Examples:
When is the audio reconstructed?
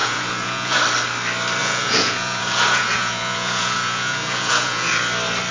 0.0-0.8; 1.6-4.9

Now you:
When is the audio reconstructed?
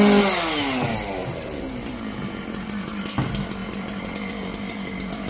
1.2-1.7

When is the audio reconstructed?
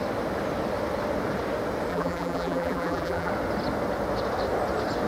1.9-3.3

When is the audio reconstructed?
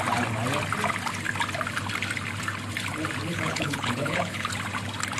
3.3-4.5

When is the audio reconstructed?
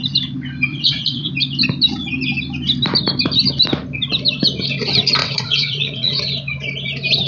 0.7-1.3; 5.2-6.2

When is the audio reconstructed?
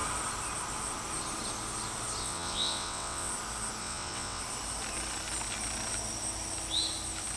2.2-3.3; 3.8-4.4